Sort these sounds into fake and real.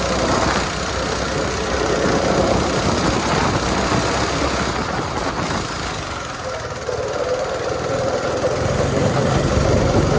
real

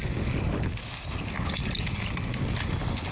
real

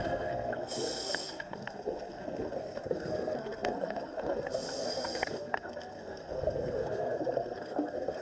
fake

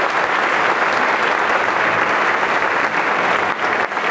real